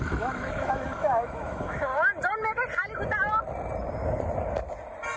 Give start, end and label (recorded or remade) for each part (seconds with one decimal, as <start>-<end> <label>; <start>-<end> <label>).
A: 0.0-1.9 remade; 1.9-5.2 recorded